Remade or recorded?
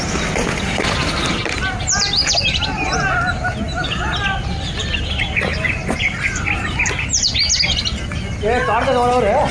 recorded